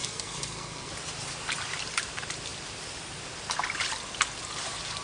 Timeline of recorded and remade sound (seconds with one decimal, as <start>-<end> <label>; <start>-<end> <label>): 0.0-0.9 remade; 0.9-5.0 recorded